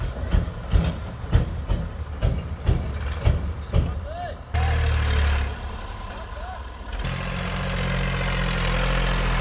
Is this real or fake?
real